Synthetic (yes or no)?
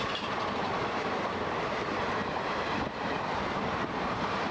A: yes